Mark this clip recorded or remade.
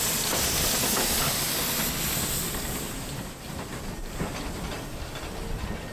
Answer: recorded